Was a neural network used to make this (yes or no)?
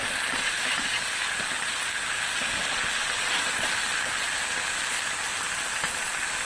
no